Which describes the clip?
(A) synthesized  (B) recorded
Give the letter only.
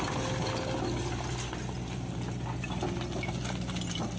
B